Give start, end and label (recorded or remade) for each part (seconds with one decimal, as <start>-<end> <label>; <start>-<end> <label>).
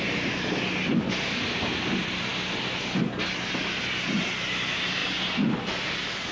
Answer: 0.0-6.3 recorded